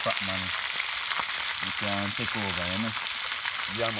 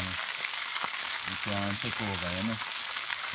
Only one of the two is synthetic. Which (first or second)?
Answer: second